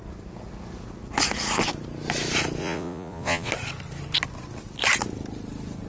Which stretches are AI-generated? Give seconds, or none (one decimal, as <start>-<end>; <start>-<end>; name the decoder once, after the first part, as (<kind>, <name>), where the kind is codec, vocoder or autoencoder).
2.6-3.5 (vocoder, Vocos)